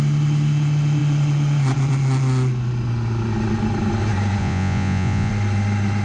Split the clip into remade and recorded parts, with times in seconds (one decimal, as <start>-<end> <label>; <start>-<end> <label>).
0.0-4.4 recorded; 4.4-5.3 remade; 5.3-6.0 recorded